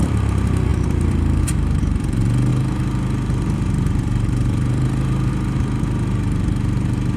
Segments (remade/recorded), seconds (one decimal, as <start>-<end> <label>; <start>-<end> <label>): 0.0-7.2 remade